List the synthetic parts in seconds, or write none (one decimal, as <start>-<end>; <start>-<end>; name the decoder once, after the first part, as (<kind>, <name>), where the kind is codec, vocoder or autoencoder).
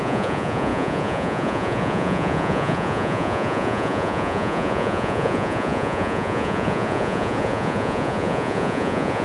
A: 0.0-9.2 (vocoder, Vocos)